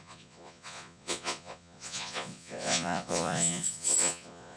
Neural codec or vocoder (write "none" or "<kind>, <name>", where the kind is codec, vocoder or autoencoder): vocoder, Vocos